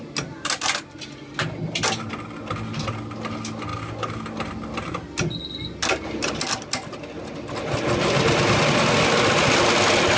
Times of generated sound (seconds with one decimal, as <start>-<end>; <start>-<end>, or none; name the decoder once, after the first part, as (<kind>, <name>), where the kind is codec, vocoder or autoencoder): none

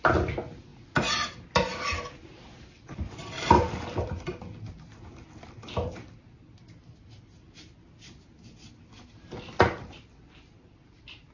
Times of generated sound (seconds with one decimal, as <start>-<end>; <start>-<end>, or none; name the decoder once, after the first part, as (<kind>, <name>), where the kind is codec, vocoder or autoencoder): none

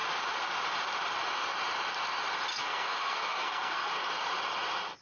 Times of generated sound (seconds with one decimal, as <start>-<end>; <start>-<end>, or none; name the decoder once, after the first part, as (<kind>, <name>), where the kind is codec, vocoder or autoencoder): 2.5-3.9 (codec, SNAC)